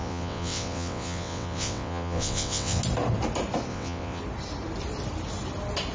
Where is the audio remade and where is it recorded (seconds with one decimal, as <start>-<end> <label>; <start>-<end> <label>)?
0.0-2.8 remade; 2.8-3.7 recorded; 3.7-4.2 remade; 4.2-5.9 recorded